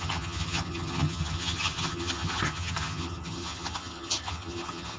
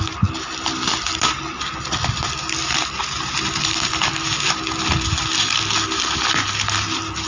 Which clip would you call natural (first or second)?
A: second